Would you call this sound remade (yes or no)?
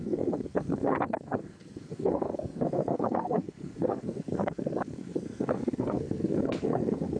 yes